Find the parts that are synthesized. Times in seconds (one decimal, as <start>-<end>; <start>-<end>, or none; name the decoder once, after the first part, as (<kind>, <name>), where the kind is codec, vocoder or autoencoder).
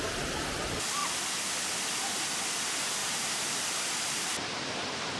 3.0-3.5 (vocoder, BigVGAN v2)